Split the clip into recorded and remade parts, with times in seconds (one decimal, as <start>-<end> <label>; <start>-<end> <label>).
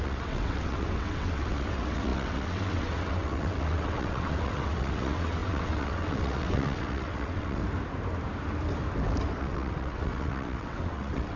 0.0-7.6 remade; 7.6-9.4 recorded; 9.4-11.4 remade